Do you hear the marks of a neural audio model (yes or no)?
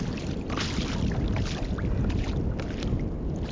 no